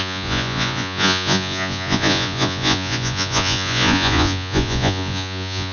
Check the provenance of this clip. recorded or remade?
remade